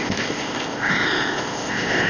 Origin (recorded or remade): remade